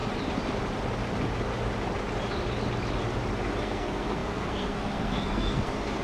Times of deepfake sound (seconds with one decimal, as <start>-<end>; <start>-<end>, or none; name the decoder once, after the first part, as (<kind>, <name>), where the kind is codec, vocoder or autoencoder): 3.6-6.0 (codec, SNAC)